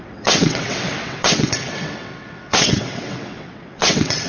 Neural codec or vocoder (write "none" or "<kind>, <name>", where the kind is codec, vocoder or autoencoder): vocoder, WaveNeXt